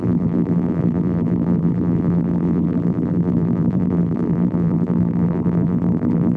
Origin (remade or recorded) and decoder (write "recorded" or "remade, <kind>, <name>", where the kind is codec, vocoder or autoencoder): remade, vocoder, BigVGAN v2